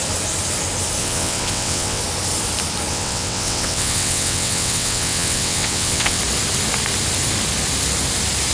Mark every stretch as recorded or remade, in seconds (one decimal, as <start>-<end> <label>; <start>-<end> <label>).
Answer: 0.0-1.0 recorded; 1.0-2.0 remade; 2.0-2.9 recorded; 2.9-6.2 remade; 6.2-8.5 recorded